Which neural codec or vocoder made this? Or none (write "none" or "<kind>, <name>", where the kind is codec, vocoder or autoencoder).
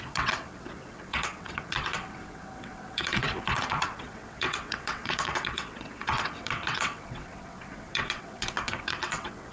vocoder, WaveNeXt